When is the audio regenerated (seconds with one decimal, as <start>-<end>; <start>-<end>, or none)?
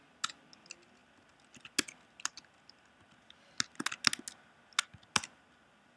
none